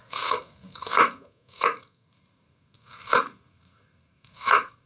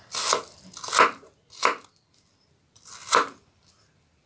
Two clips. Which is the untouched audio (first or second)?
second